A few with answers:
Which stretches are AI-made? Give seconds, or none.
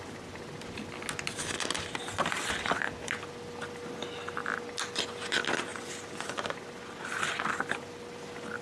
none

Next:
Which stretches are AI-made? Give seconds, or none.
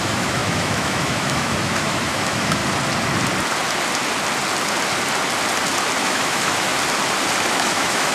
0.0-2.6 (autoencoder, DAC-VAE); 6.0-6.7; 7.5-8.1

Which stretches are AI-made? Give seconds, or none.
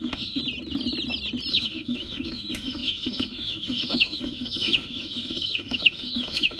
0.0-0.4 (autoencoder, DAC-VAE); 1.5-6.6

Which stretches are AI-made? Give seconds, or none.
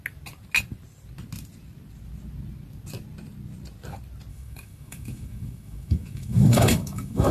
4.3-7.3 (autoencoder, DAC-VAE)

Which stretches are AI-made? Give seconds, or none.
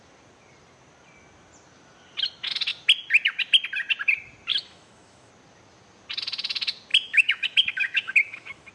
4.5-5.3 (autoencoder, DAC-VAE); 6.9-8.7